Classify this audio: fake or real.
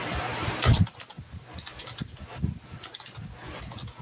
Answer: real